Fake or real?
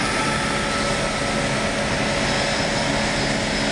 real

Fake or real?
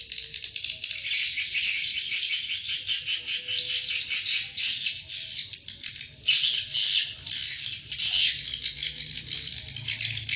real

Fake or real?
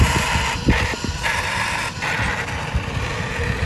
real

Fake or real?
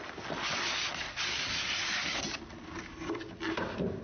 real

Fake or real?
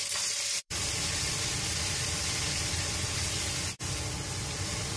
fake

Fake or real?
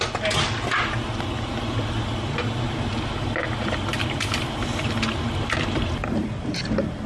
real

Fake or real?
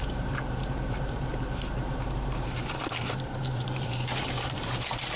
fake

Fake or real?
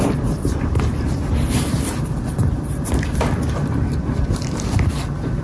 fake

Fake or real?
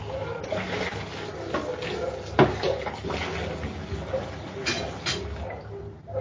real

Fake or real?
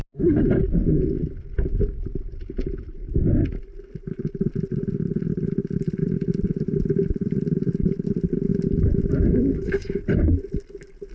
real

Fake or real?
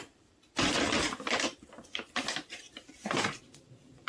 fake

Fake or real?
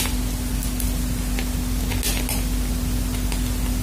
real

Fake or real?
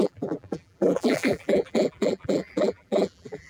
fake